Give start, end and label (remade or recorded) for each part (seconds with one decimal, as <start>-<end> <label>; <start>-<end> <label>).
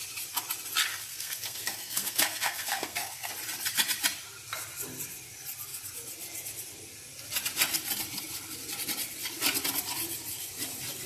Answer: 0.0-0.9 recorded; 0.9-3.3 remade; 3.3-11.1 recorded